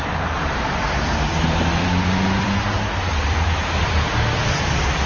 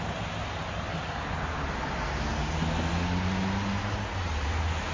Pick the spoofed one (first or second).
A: first